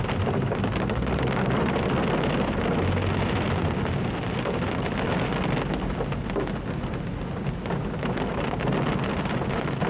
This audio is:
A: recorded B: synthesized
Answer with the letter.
A